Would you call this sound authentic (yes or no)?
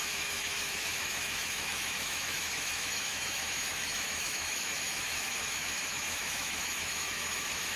no